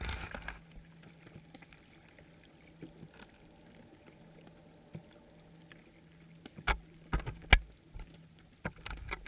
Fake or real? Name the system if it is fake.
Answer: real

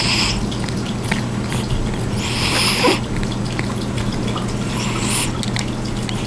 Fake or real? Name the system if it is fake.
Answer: real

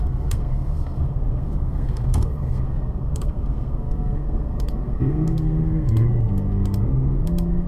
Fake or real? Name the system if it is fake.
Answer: fake, codec, SNAC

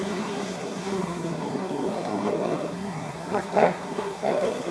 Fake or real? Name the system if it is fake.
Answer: fake, codec, SNAC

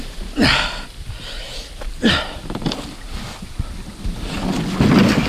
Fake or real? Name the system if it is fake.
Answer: real